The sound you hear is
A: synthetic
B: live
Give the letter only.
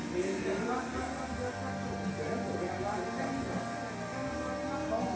B